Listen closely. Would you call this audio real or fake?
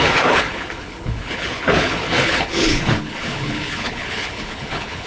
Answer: fake